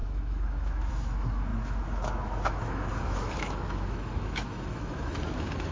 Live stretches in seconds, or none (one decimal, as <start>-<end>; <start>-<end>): none